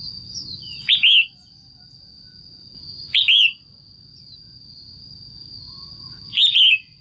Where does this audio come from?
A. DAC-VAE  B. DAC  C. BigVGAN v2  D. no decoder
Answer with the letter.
D